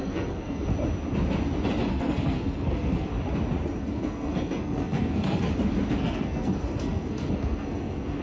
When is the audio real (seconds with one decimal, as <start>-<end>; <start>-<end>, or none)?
0.7-1.9; 3.1-3.8; 5.5-6.0